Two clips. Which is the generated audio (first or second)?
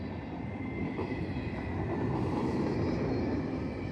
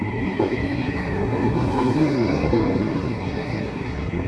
second